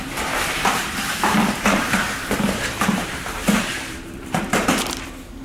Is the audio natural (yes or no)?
no